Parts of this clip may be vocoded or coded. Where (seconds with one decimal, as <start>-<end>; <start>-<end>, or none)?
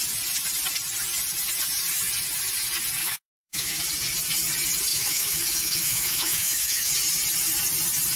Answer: 3.0-3.8; 4.9-6.9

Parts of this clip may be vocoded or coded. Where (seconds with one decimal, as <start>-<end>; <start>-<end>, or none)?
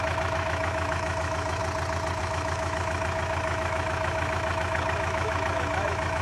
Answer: 0.0-1.6; 2.2-6.2